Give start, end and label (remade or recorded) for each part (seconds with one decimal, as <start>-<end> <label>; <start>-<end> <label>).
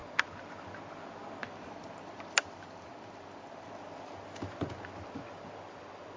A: 0.0-1.4 recorded; 1.4-3.7 remade; 3.7-6.2 recorded